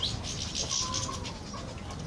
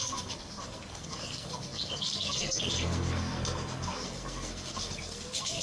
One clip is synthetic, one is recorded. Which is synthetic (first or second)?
second